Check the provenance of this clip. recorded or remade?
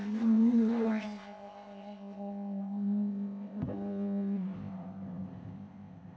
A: remade